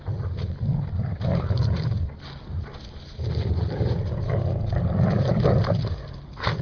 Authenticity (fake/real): real